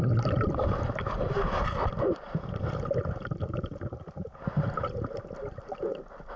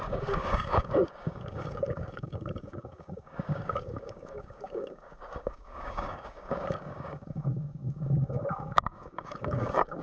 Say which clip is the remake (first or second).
second